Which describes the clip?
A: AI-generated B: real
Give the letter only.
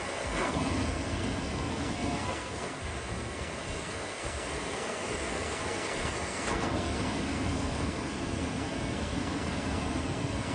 A